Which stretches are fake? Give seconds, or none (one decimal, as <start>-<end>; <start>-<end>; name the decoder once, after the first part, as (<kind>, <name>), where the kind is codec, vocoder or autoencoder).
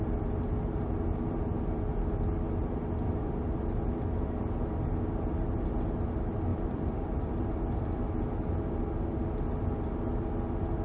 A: 6.5-7.8 (vocoder, BigVGAN v2)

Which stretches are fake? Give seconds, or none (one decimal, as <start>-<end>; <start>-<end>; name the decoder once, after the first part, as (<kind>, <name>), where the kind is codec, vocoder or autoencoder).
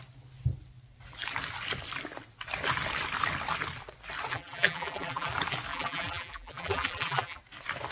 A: 4.3-5.3 (vocoder, BigVGAN v2); 5.7-7.4